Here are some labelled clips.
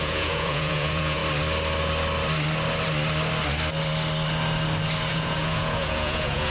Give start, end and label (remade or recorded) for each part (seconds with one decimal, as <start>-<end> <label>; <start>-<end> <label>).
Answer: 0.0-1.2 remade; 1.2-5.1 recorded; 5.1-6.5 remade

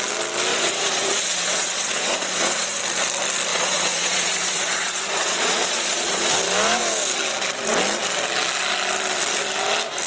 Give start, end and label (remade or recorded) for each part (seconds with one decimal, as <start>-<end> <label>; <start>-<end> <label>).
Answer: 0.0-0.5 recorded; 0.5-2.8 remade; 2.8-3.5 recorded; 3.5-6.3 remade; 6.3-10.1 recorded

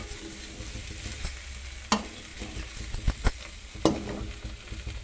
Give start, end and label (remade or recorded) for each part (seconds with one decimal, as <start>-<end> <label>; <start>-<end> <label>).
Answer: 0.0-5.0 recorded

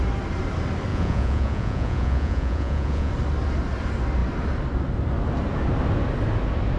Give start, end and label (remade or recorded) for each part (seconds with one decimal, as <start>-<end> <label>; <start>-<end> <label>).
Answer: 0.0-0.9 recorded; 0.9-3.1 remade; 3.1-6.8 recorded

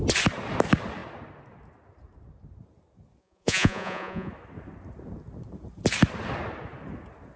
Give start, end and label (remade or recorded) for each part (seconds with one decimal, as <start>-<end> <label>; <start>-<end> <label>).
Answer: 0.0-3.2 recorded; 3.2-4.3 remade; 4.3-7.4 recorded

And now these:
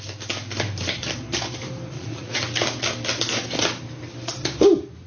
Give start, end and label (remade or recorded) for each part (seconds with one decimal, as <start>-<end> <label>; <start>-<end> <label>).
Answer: 0.0-1.9 recorded; 1.9-2.4 remade; 2.4-5.1 recorded

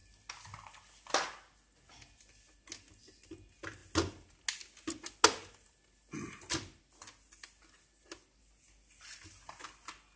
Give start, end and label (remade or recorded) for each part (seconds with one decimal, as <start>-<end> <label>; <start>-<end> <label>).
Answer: 0.0-10.2 recorded

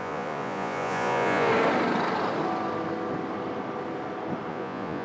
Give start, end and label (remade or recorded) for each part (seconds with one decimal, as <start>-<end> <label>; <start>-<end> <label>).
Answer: 0.0-1.5 remade; 1.5-4.5 recorded; 4.5-5.0 remade